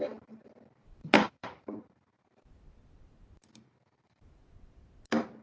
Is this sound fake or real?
fake